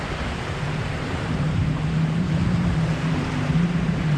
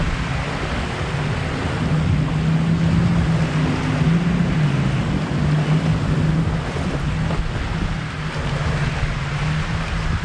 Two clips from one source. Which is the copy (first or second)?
first